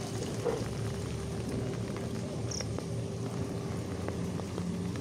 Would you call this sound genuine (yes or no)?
no